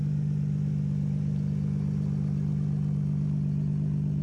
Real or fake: real